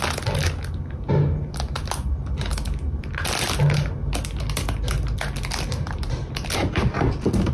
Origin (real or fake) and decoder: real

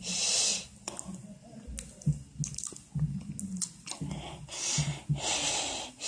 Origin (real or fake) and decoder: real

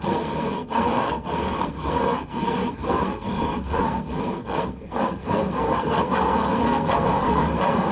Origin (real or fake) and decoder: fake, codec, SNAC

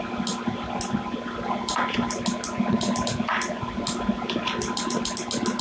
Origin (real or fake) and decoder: real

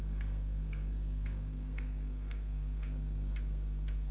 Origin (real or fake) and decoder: fake, codec, SNAC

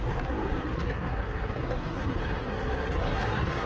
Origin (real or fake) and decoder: fake, codec, SNAC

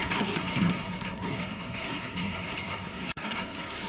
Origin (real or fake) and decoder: fake, codec, SNAC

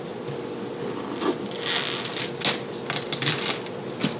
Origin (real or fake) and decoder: real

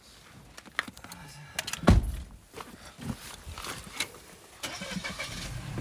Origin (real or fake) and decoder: real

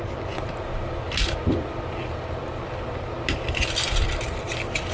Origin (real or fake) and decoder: real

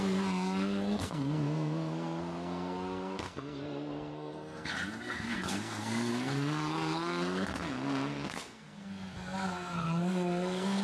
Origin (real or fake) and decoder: fake, codec, SNAC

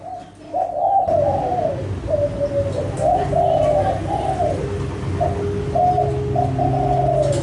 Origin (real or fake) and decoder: real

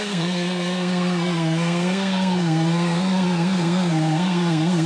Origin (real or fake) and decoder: fake, codec, SNAC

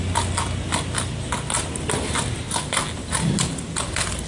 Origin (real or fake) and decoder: real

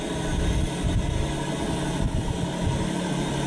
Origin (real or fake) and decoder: real